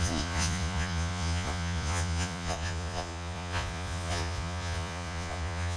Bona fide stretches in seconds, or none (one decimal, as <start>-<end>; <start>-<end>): none